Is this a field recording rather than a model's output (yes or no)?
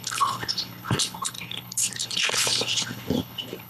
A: no